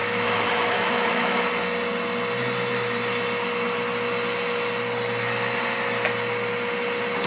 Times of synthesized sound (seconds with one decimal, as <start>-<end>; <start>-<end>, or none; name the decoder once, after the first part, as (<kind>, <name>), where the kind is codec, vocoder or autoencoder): 0.0-1.4 (autoencoder, DAC-VAE)